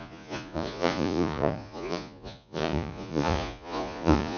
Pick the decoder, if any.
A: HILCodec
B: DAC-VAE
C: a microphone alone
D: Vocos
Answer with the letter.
D